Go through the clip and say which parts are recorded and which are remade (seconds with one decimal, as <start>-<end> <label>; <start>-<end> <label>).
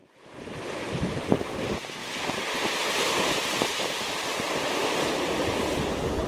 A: 0.0-2.0 remade; 2.0-2.8 recorded; 2.8-4.3 remade; 4.3-5.4 recorded; 5.4-6.3 remade